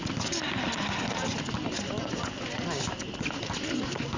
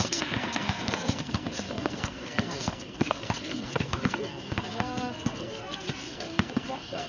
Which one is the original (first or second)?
first